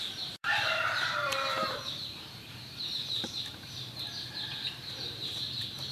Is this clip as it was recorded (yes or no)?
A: no